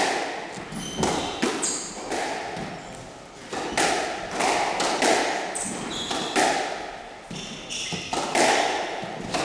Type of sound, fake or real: real